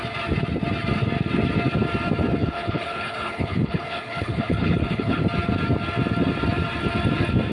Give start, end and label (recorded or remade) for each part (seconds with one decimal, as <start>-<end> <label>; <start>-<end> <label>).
0.0-2.4 recorded; 2.4-5.2 remade; 5.2-7.5 recorded